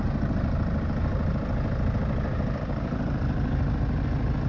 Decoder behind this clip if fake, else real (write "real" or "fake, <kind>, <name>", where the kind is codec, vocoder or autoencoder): real